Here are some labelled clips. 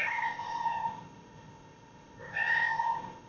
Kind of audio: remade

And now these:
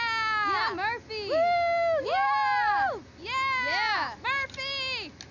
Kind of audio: recorded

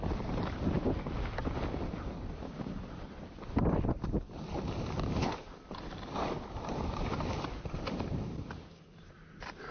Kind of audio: recorded